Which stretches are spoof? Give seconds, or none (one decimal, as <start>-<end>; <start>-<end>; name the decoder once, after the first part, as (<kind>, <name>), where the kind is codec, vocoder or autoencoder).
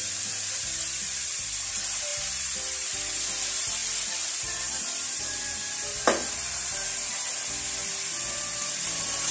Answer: 0.0-3.8 (vocoder, BigVGAN v2); 4.4-7.4; 8.4-9.3